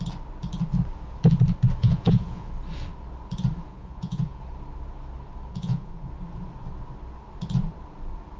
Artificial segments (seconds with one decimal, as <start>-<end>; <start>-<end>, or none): 1.8-2.5; 3.7-4.4; 5.5-6.1